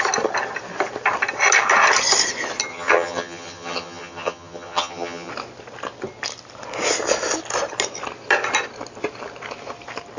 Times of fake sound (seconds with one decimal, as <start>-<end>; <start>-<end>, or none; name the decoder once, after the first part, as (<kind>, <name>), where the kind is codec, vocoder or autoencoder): 2.7-5.3 (vocoder, HiFi-GAN)